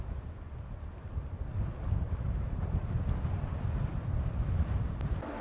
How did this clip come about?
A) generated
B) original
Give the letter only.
B